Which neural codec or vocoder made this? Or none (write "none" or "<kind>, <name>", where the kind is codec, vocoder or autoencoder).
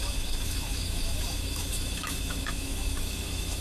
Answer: autoencoder, DAC-VAE